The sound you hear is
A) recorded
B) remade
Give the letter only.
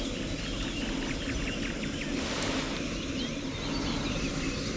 A